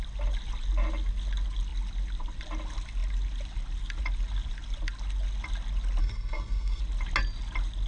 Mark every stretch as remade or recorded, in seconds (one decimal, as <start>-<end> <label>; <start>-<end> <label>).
0.0-6.0 recorded; 6.0-6.8 remade; 6.8-7.9 recorded

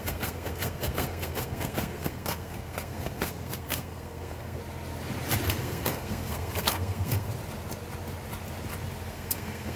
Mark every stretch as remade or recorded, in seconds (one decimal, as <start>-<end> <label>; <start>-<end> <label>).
0.0-4.6 remade; 4.6-5.5 recorded; 5.5-7.3 remade; 7.3-9.1 recorded; 9.1-9.8 remade

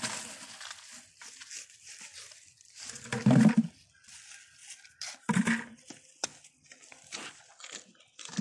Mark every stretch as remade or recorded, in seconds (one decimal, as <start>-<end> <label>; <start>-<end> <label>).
0.0-2.1 recorded; 2.1-3.5 remade; 3.5-4.6 recorded; 4.6-5.2 remade; 5.2-8.4 recorded

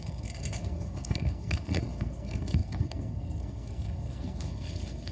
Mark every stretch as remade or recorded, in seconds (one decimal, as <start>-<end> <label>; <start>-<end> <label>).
0.0-5.1 remade